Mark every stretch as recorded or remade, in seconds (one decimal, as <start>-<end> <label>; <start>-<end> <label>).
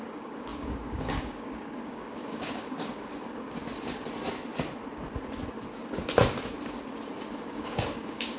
0.0-3.6 remade; 3.6-7.5 recorded; 7.5-8.4 remade